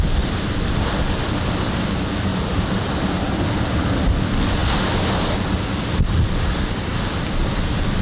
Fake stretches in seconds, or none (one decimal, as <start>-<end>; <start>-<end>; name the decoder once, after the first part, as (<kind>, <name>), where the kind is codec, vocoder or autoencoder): 2.3-3.3 (vocoder, BigVGAN v2)